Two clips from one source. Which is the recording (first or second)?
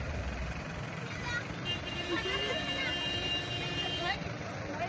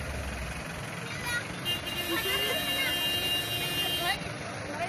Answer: second